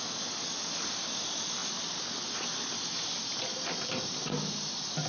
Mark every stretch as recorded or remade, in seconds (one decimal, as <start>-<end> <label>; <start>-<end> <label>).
0.0-5.1 recorded